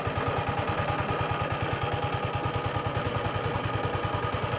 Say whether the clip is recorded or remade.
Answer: recorded